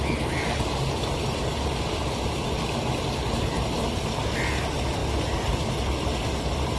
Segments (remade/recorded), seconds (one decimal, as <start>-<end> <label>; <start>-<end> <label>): 0.0-6.8 recorded